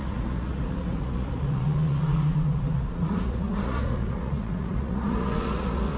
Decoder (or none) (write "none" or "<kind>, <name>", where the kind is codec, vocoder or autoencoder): vocoder, Vocos